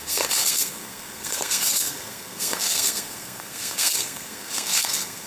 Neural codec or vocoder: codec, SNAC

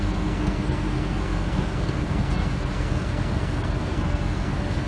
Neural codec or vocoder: codec, SNAC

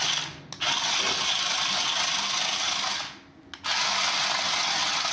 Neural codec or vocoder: none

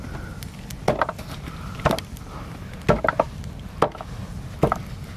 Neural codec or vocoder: none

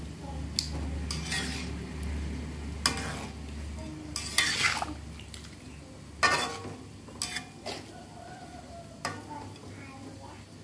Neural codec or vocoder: none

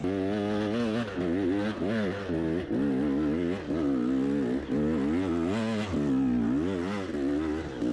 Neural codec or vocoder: none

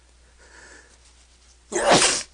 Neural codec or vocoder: none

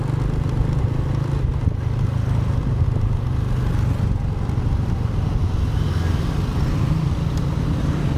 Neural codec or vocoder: none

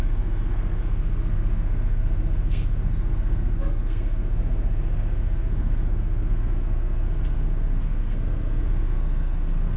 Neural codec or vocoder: codec, SNAC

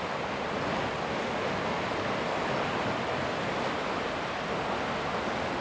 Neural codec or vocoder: none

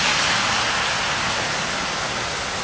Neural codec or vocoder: none